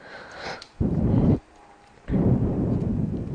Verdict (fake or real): fake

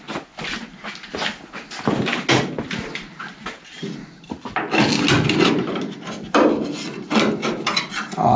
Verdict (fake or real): real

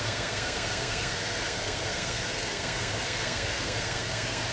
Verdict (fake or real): fake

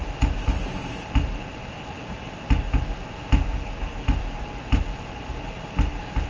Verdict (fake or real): real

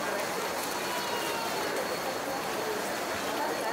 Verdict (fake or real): real